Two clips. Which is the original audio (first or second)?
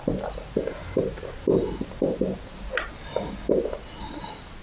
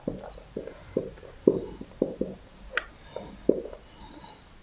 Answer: first